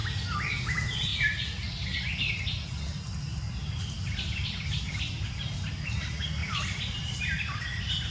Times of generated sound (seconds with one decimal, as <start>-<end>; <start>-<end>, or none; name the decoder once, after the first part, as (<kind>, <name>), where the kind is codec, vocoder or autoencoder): 6.4-7.1 (vocoder, BigVGAN v2)